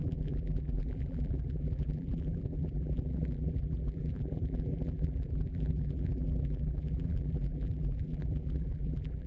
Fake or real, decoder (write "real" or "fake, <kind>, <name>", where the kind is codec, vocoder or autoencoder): fake, vocoder, BigVGAN v2